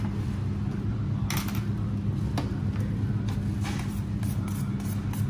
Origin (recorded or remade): recorded